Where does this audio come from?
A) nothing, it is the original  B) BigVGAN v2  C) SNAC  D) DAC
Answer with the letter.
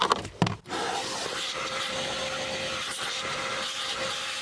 A